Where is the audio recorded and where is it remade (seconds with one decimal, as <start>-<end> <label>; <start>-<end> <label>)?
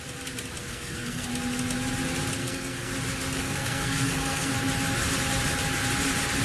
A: 0.0-0.6 recorded; 0.6-1.3 remade; 1.3-2.4 recorded; 2.4-2.9 remade; 2.9-3.4 recorded; 3.4-4.5 remade; 4.5-6.4 recorded